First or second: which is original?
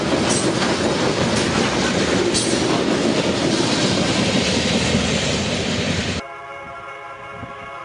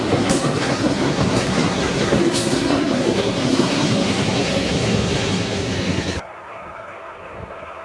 first